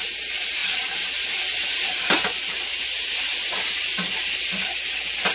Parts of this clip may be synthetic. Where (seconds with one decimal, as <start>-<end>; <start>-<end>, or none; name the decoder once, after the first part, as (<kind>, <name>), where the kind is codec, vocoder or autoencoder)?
none

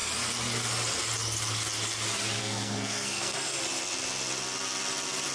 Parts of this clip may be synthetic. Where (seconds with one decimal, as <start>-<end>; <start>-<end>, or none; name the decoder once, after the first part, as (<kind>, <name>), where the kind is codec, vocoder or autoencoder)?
2.4-3.6 (codec, SNAC)

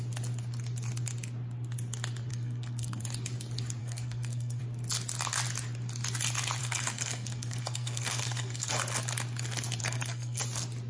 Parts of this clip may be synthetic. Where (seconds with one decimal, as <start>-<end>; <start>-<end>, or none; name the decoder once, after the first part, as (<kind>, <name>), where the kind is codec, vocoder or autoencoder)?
2.3-3.0 (codec, SNAC); 3.8-4.6; 6.6-8.7; 9.8-10.4

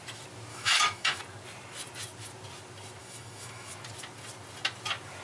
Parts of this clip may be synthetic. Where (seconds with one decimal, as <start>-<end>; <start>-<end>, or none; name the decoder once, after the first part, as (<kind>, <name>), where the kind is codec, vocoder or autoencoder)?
0.5-1.2 (autoencoder, DAC-VAE); 3.0-3.7

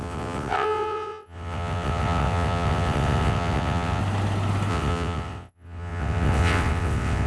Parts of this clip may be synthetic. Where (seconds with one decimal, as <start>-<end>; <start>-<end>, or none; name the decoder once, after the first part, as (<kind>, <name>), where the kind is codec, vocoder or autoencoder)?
0.0-4.0 (vocoder, WaveNeXt); 4.7-7.3

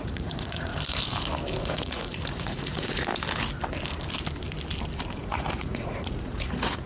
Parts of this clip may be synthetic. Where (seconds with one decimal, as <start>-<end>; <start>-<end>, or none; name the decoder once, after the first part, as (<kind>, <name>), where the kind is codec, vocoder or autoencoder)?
0.0-0.7 (vocoder, Vocos); 1.6-3.1; 5.1-6.9

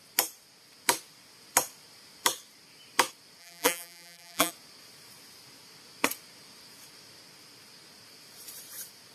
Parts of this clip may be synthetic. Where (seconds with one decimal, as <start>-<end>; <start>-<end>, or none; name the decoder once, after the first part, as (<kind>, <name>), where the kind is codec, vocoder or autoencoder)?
3.4-4.5 (vocoder, BigVGAN v2)

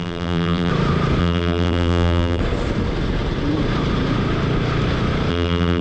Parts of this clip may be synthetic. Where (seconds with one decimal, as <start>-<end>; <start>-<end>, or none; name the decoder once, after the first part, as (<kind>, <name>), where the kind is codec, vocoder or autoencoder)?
0.0-0.7 (vocoder, BigVGAN v2); 1.2-2.4; 5.3-5.8